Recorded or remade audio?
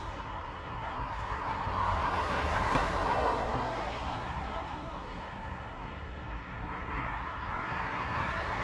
remade